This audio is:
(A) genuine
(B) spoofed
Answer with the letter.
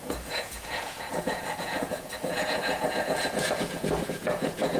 B